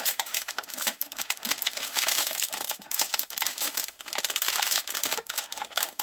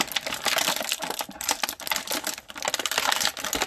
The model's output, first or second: first